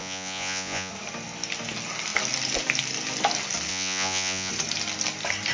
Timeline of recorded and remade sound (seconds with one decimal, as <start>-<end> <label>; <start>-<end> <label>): 0.0-0.9 remade; 0.9-3.7 recorded; 3.7-4.5 remade; 4.5-5.5 recorded